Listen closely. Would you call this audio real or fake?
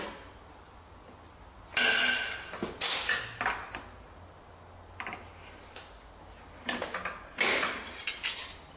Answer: real